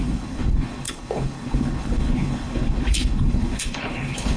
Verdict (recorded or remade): remade